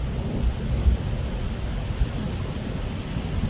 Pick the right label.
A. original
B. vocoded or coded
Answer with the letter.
A